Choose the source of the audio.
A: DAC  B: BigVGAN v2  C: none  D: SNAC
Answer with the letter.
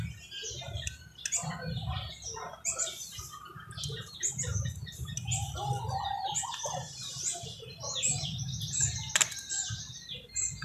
C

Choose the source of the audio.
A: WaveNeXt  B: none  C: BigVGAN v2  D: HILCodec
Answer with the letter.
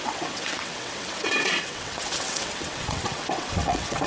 A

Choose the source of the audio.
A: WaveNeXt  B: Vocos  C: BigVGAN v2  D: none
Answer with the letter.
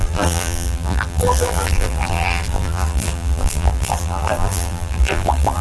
C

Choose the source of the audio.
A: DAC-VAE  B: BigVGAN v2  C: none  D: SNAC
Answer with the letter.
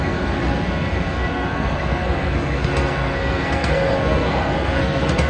D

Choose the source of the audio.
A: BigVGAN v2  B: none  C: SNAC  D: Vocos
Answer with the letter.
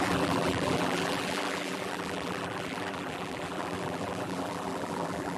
A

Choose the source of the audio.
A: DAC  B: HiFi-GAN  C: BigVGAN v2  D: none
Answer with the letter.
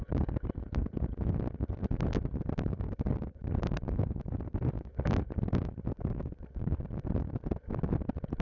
D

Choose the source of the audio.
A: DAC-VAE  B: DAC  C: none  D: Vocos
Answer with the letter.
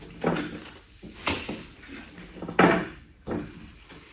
C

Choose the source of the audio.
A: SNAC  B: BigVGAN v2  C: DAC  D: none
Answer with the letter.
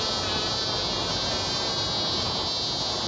D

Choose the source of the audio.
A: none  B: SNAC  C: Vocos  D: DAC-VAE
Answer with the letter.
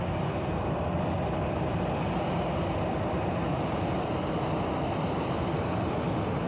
A